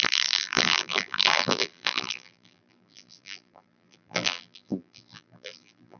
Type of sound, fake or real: fake